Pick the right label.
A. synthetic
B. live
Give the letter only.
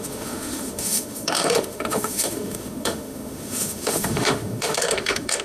A